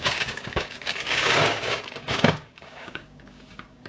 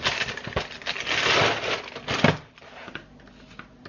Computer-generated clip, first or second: first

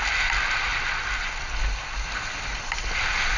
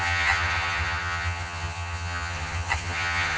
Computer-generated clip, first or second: second